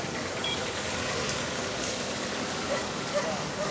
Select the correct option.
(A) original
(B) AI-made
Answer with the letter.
B